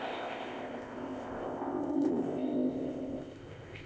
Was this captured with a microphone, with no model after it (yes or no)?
no